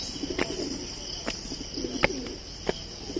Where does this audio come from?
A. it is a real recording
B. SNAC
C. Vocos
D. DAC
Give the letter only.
A